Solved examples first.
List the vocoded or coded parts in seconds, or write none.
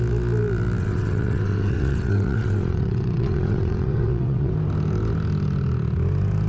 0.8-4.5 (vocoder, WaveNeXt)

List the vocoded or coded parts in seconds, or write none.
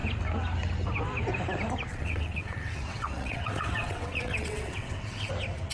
1.9-5.3 (vocoder, WaveNeXt)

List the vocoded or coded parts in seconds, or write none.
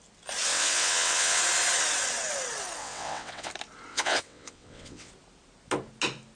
0.5-1.4 (vocoder, WaveNeXt); 2.8-3.5; 3.9-5.1